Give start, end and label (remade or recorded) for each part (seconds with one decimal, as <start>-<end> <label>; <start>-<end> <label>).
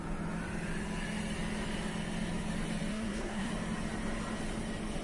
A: 0.0-2.9 recorded; 2.9-3.5 remade; 3.5-5.0 recorded